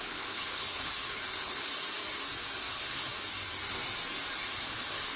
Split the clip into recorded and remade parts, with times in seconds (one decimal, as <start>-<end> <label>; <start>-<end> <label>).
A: 0.0-1.7 remade; 1.7-2.7 recorded; 2.7-3.1 remade; 3.1-4.4 recorded; 4.4-5.2 remade